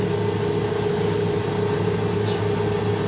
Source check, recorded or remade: recorded